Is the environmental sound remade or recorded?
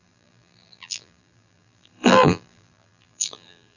remade